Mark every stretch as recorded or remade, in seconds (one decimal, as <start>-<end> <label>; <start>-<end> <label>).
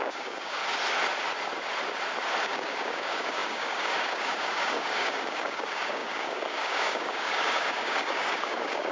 0.0-0.6 remade; 0.6-2.4 recorded; 2.4-8.9 remade